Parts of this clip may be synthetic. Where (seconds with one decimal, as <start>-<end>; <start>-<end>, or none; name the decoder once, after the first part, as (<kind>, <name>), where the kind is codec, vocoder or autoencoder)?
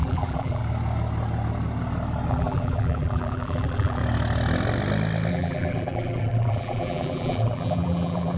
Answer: 0.0-0.6 (vocoder, BigVGAN v2); 2.3-4.0; 5.3-8.4